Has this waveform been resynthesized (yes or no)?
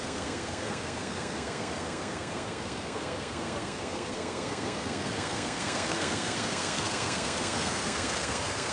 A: yes